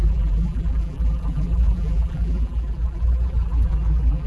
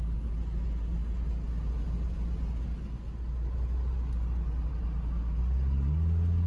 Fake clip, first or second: first